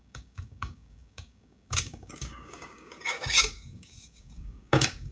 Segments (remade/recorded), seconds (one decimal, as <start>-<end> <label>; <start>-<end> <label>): 0.0-5.1 remade